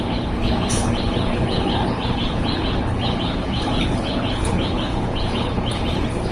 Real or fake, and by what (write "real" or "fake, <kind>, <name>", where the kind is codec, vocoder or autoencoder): fake, codec, HILCodec